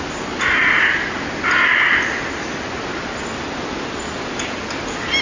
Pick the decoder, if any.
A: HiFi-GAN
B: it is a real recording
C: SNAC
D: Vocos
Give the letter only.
B